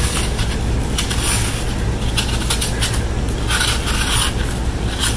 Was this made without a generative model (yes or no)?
yes